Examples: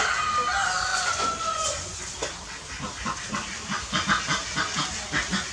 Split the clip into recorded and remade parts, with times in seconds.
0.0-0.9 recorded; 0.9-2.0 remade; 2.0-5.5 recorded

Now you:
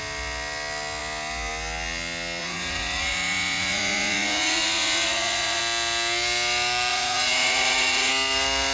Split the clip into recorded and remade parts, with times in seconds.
0.0-2.4 recorded; 2.4-5.6 remade; 5.6-6.9 recorded; 6.9-8.1 remade; 8.1-8.7 recorded

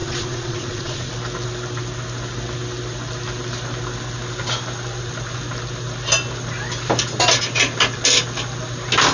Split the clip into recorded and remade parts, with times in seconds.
0.0-1.1 remade; 1.1-9.1 recorded

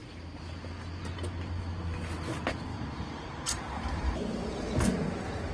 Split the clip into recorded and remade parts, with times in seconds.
0.0-2.7 recorded; 2.7-4.7 remade; 4.7-5.5 recorded

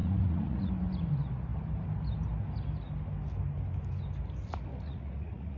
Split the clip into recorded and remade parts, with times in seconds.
0.0-0.7 remade; 0.7-4.7 recorded; 4.7-5.6 remade

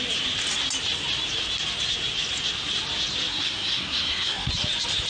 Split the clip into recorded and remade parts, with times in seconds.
0.0-3.3 recorded; 3.3-4.5 remade; 4.5-5.1 recorded

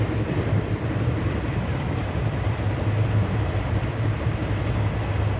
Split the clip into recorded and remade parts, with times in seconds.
0.0-4.4 remade; 4.4-5.4 recorded